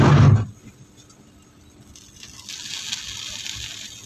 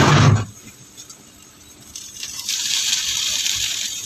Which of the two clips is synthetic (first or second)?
second